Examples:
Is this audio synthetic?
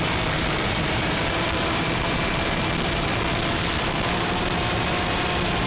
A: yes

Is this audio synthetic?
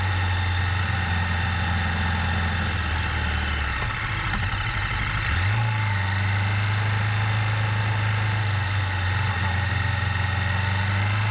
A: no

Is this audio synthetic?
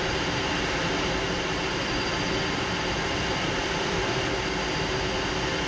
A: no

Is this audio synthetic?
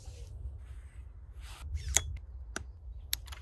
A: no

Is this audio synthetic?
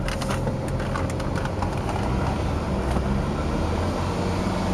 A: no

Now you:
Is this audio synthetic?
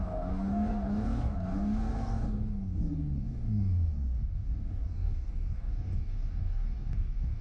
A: yes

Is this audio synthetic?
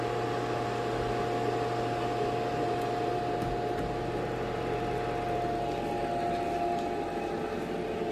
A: no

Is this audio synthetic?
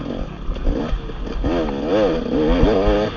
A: no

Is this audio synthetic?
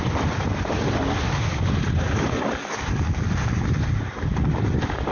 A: no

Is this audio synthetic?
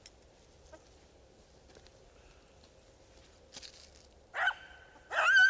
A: no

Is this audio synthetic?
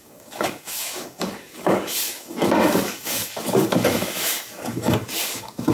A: yes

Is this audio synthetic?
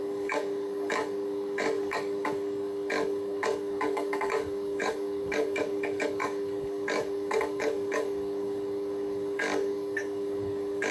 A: yes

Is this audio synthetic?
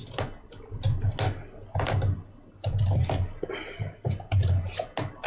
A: no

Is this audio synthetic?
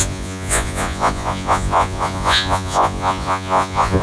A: yes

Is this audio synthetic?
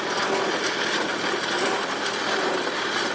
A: no